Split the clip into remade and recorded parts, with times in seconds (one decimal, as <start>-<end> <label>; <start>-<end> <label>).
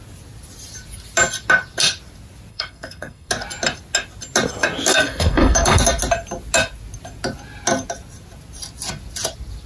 0.0-2.5 recorded; 2.5-3.3 remade; 3.3-4.9 recorded; 4.9-5.8 remade; 5.8-9.7 recorded